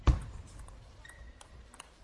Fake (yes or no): yes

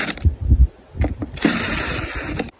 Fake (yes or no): yes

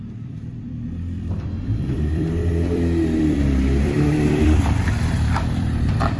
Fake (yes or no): yes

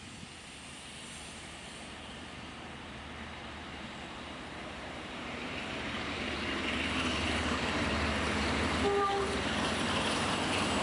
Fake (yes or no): yes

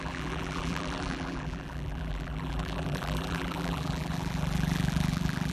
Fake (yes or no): yes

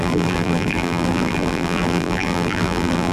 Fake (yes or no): yes